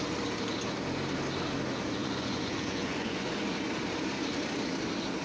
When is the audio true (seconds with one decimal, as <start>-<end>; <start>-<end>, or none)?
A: 0.0-2.0; 3.3-5.2